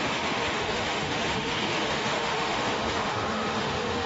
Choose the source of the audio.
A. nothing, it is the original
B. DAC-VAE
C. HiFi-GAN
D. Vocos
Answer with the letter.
B